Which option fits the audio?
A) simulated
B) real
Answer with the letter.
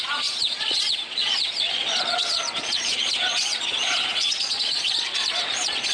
A